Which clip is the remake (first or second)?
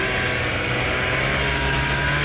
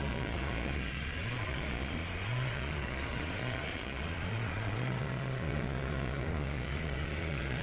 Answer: second